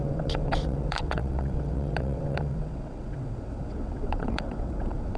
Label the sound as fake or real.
fake